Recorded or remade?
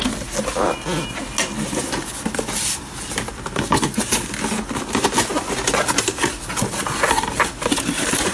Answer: recorded